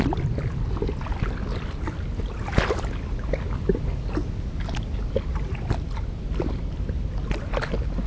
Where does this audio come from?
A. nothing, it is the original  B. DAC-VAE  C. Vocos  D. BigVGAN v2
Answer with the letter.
A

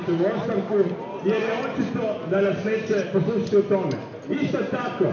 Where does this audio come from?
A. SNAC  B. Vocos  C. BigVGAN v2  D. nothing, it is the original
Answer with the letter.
D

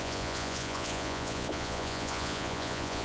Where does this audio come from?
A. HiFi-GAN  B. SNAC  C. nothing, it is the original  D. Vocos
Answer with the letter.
D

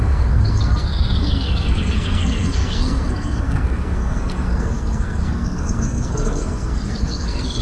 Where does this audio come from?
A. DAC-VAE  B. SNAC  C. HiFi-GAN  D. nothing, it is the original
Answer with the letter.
B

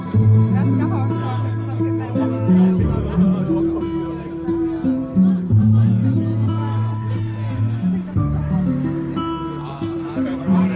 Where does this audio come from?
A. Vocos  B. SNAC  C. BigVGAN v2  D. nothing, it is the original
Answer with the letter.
C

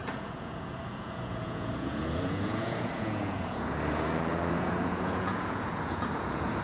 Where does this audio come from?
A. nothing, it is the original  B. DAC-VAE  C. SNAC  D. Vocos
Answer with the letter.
D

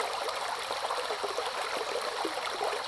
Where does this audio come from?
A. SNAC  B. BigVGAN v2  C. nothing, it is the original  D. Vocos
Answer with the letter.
C